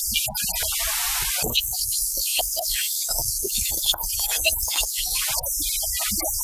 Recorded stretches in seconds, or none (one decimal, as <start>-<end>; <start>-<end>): 0.0-1.4; 5.2-6.4